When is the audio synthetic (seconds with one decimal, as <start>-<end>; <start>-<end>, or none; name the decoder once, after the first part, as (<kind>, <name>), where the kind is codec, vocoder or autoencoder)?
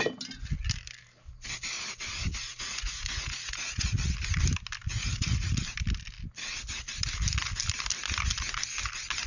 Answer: 2.3-4.1 (vocoder, Vocos); 4.9-5.5